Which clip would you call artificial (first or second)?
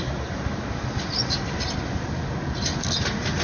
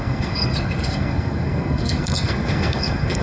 second